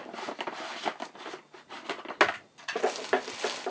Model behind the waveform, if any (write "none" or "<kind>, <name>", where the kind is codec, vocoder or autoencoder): none